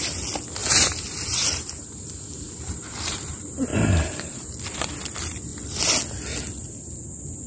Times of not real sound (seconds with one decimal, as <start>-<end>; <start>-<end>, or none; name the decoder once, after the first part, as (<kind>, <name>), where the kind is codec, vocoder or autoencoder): 0.6-3.3 (vocoder, BigVGAN v2); 3.7-4.8